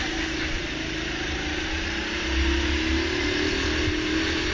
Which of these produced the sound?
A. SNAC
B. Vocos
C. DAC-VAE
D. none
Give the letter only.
D